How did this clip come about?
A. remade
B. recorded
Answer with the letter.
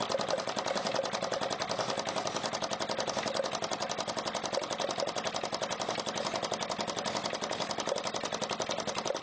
B